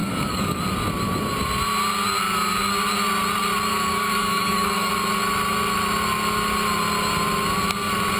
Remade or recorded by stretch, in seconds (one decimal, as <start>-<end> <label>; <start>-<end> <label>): 0.0-0.6 remade; 0.6-3.7 recorded; 3.7-4.9 remade; 4.9-8.2 recorded